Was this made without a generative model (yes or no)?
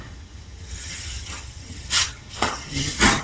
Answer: no